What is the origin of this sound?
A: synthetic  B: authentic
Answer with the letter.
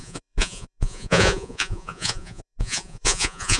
A